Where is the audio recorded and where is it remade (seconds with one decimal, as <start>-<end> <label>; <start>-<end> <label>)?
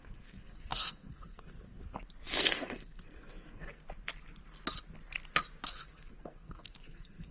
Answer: 0.0-1.8 remade; 1.8-2.4 recorded; 2.4-3.8 remade; 3.8-5.7 recorded; 5.7-7.3 remade